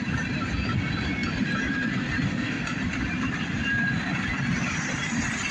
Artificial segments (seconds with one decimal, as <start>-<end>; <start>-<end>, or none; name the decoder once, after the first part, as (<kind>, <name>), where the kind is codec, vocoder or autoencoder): 2.3-2.8 (codec, SNAC)